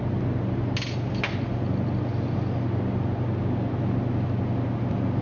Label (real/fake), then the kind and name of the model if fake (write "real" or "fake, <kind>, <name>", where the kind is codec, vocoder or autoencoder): real